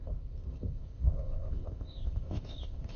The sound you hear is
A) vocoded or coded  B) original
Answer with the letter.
A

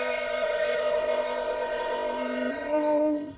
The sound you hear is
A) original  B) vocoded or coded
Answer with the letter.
B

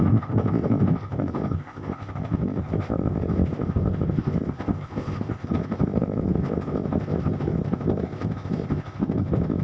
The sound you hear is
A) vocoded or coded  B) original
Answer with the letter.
A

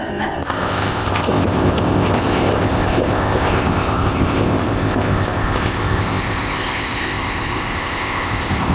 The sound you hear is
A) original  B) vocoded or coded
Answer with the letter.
B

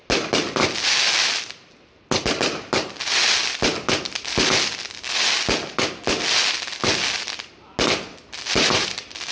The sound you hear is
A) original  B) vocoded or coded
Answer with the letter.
A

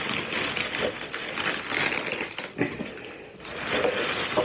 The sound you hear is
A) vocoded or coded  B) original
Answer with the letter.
B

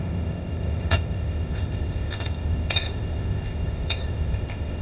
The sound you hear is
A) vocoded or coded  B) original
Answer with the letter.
A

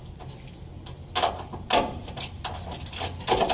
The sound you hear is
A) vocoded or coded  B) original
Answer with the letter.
B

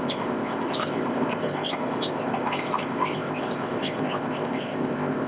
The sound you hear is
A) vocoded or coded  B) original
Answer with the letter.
A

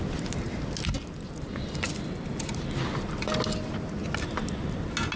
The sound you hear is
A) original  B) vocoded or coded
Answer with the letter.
A